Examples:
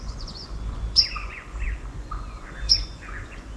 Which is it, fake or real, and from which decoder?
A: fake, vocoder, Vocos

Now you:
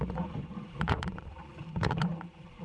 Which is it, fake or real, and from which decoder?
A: fake, vocoder, Vocos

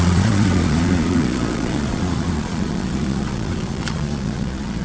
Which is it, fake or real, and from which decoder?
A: fake, vocoder, Vocos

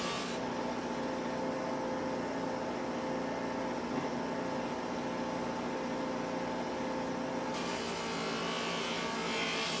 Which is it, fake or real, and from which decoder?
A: real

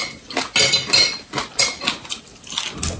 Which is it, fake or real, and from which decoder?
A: real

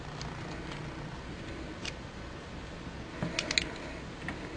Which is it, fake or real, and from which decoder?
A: real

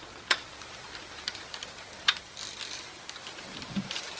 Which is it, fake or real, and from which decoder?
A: real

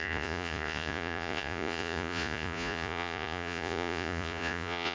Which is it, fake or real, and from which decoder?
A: fake, vocoder, Vocos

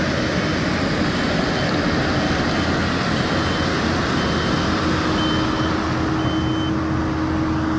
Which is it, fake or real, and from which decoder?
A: real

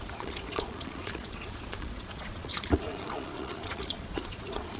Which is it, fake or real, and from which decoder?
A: fake, vocoder, Vocos